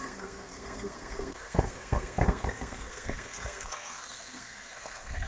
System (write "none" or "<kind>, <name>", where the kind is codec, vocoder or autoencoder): codec, SNAC